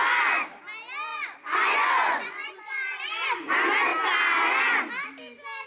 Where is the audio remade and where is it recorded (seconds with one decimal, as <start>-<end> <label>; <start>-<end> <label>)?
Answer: 0.0-1.1 recorded; 1.1-3.5 remade; 3.5-5.7 recorded